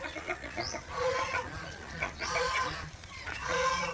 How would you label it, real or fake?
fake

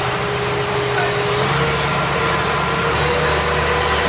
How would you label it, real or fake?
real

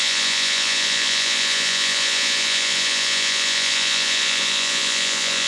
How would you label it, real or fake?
fake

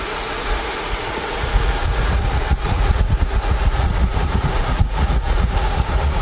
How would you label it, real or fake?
fake